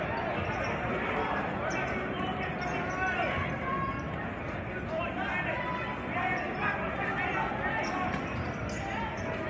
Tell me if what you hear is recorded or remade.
recorded